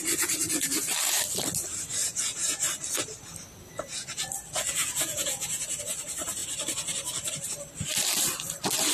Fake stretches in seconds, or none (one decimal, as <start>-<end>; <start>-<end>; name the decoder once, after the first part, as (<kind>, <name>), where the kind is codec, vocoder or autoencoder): 2.0-2.6 (vocoder, Vocos); 4.8-5.8